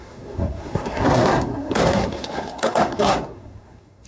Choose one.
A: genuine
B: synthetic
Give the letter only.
B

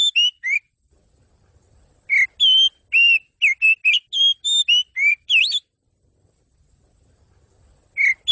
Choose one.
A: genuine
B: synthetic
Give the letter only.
A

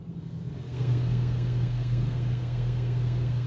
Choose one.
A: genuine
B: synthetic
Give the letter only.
B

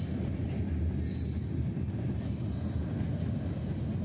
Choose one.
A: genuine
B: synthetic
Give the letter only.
A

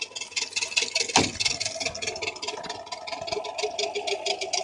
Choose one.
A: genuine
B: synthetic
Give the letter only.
A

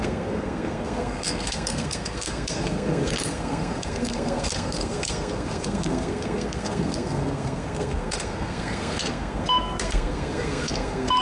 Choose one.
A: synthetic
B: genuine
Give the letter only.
A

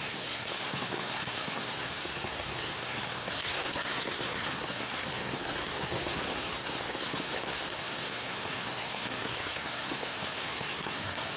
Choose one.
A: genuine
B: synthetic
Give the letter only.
B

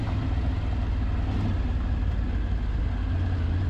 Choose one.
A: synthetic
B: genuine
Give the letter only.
B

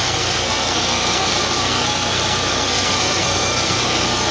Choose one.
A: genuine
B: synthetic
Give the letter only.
B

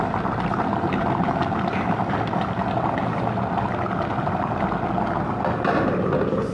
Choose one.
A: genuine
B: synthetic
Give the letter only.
A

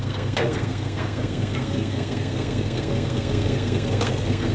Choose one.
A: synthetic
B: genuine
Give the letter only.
A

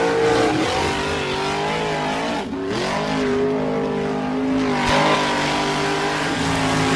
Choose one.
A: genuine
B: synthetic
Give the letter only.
A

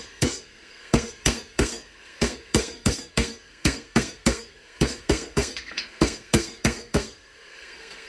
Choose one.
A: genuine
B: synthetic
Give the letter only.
B